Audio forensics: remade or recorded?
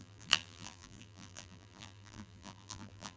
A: remade